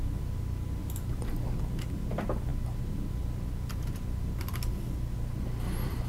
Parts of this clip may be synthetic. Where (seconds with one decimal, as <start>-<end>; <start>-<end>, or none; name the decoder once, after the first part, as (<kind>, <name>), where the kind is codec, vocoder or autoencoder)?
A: 0.8-1.3 (vocoder, BigVGAN v2)